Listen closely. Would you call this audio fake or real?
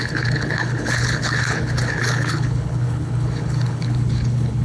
fake